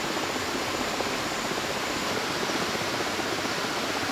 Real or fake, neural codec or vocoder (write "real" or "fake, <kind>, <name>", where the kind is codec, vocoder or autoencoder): real